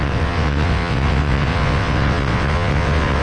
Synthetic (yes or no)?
yes